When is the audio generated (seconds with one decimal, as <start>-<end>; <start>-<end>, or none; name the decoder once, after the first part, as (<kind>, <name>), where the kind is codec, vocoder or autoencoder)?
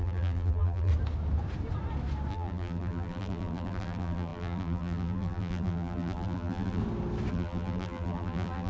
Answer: 0.0-0.9 (vocoder, BigVGAN v2); 2.3-6.8; 7.3-8.7